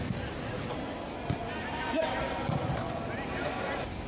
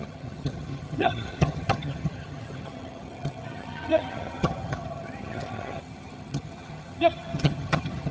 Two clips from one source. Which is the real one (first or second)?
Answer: first